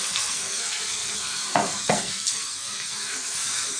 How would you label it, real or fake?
fake